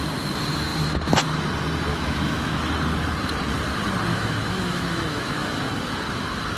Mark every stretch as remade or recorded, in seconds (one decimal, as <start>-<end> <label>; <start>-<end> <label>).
0.0-1.9 recorded; 1.9-2.6 remade; 2.6-4.1 recorded; 4.1-5.6 remade; 5.6-6.6 recorded